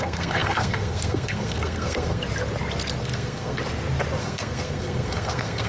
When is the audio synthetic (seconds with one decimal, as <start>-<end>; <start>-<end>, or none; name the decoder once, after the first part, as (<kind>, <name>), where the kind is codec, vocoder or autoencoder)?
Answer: 0.0-2.2 (codec, SNAC); 3.0-3.6; 4.2-5.7